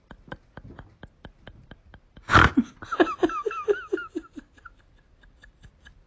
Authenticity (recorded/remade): recorded